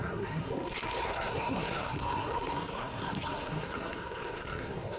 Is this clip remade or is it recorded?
remade